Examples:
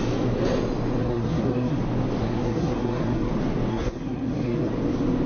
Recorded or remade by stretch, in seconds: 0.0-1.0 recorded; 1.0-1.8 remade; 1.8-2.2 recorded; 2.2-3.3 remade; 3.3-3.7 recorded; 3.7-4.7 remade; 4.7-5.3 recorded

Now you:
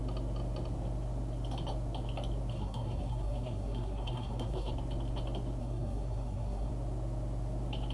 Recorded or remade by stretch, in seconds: 0.0-2.5 recorded; 2.5-4.7 remade; 4.7-5.6 recorded; 5.6-6.7 remade; 6.7-7.9 recorded

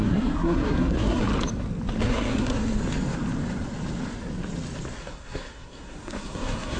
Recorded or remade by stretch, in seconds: 0.0-1.3 remade; 1.3-2.0 recorded; 2.0-2.8 remade; 2.8-5.0 recorded; 5.0-6.8 remade

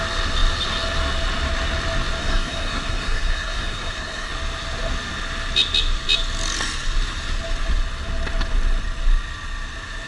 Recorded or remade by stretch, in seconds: 0.0-2.2 recorded; 2.2-4.3 remade; 4.3-10.1 recorded